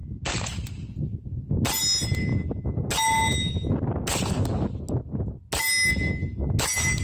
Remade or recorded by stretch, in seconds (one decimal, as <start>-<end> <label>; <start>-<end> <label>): 0.0-7.0 recorded